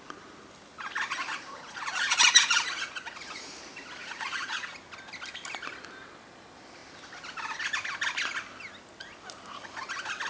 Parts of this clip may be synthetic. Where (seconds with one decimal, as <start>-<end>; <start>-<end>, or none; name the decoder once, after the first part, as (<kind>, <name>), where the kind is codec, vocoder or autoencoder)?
1.2-3.4 (vocoder, Vocos); 4.0-4.7